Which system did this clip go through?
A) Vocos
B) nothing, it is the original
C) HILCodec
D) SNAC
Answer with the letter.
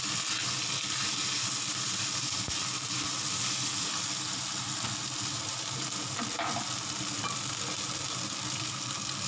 B